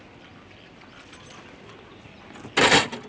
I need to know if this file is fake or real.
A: real